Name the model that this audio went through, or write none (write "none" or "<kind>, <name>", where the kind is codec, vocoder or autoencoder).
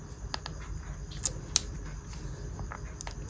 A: none